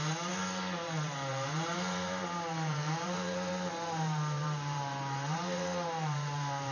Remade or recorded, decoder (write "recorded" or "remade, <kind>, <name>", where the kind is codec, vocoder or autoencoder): remade, vocoder, BigVGAN v2